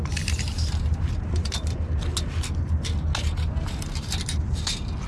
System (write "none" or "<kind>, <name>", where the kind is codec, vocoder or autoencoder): none